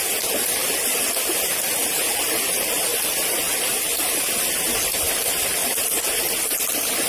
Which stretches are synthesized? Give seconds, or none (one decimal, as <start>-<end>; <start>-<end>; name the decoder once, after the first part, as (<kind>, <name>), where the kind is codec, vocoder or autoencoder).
0.0-2.9 (vocoder, BigVGAN v2); 4.7-7.1

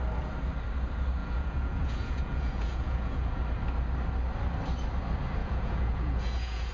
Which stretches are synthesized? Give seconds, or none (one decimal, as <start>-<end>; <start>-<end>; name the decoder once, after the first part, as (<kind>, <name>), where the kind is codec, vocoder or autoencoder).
1.2-3.4 (vocoder, Vocos); 5.4-6.7